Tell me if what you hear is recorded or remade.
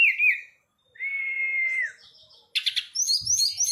recorded